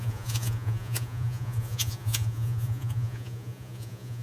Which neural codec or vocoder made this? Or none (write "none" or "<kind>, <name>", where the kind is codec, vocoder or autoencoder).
vocoder, Vocos